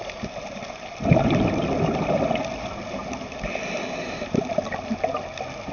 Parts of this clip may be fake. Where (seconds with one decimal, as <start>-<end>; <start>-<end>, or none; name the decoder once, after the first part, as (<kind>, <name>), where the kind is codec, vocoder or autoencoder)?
none

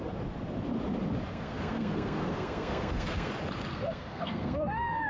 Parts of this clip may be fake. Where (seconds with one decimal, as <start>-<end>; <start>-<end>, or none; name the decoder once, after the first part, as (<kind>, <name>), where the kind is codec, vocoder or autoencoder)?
1.3-3.3 (codec, SNAC); 3.7-5.1

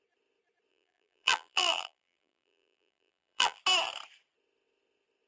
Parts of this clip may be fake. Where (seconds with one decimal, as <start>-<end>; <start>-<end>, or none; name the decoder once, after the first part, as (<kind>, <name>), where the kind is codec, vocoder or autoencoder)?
0.7-3.6 (vocoder, BigVGAN v2)

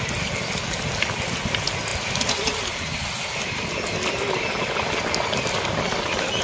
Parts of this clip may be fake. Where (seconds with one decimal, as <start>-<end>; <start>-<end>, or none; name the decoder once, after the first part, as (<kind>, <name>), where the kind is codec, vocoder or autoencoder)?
none

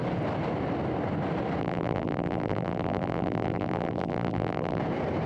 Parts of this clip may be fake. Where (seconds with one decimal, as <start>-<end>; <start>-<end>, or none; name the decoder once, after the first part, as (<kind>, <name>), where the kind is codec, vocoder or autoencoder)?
1.6-4.8 (vocoder, BigVGAN v2)

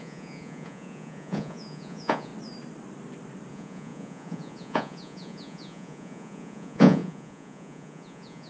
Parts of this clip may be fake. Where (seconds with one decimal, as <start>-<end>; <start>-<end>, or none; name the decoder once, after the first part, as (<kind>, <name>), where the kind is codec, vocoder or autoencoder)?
0.0-2.3 (vocoder, Vocos); 3.5-8.5